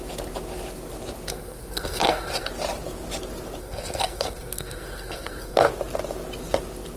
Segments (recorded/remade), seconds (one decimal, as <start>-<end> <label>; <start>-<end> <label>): 0.0-1.3 recorded; 1.3-2.5 remade; 2.5-3.6 recorded; 3.6-5.7 remade; 5.7-7.0 recorded